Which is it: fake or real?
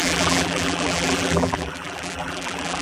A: fake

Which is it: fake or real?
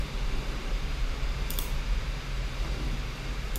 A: fake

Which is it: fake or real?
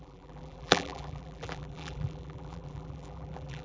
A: fake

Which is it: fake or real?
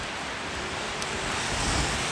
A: real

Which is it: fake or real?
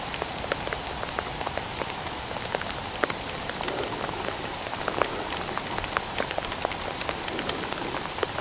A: fake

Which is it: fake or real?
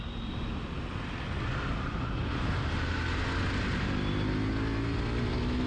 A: real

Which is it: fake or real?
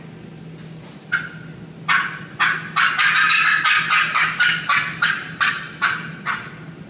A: real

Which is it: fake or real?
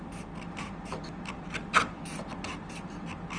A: real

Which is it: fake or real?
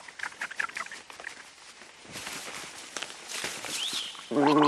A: real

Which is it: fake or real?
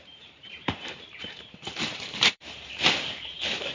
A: fake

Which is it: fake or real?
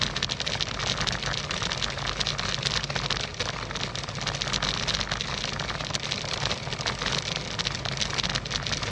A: real